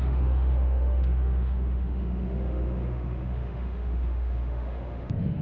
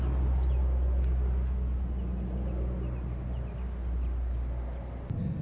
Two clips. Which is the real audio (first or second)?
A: second